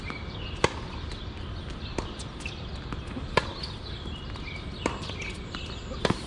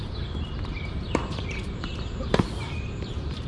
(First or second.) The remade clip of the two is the second